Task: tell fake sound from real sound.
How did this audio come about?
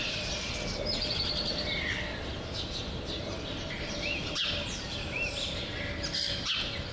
real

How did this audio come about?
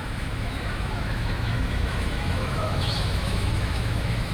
fake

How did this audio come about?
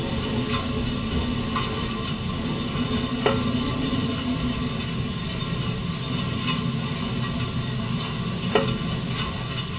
real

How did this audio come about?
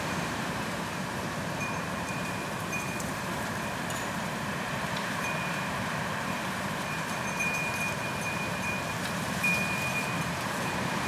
fake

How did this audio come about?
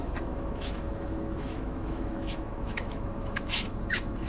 fake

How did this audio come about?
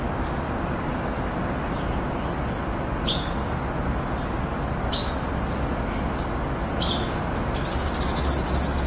real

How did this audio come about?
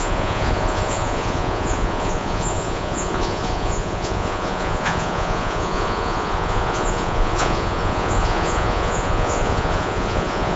fake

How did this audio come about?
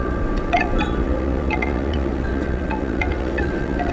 fake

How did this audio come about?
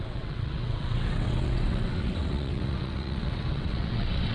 fake